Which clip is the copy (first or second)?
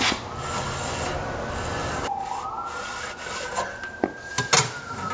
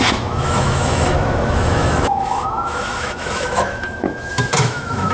second